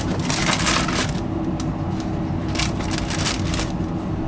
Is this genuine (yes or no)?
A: yes